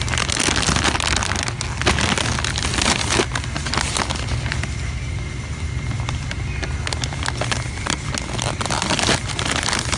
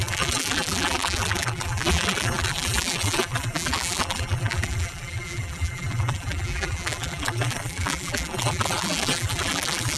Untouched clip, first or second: first